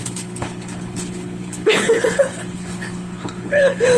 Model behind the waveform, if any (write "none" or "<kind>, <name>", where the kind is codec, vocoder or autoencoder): codec, HILCodec